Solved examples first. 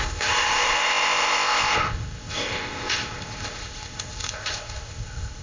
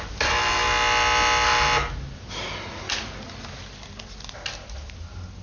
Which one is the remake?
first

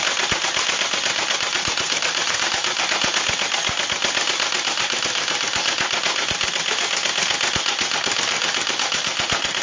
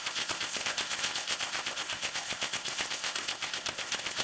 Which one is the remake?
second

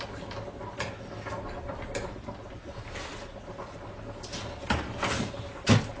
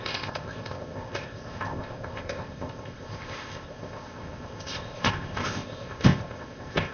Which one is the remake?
second